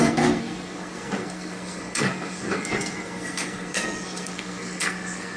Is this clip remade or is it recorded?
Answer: remade